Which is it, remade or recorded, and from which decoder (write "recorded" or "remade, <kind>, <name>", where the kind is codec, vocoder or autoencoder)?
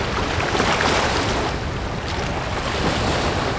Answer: recorded